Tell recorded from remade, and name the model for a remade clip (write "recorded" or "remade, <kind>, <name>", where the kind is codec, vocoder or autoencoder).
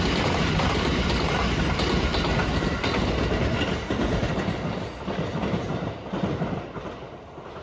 recorded